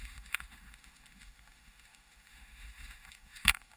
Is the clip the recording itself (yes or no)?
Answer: no